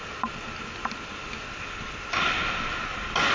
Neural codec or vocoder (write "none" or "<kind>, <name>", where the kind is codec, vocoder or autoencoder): none